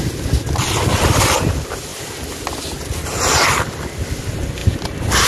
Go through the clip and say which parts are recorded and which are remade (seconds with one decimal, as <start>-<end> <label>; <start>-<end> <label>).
0.0-5.3 recorded